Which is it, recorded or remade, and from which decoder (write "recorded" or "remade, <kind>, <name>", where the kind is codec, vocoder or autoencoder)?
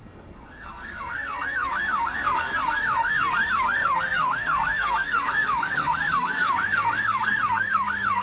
remade, codec, SNAC